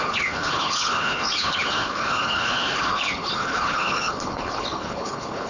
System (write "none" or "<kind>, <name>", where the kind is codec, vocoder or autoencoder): codec, HILCodec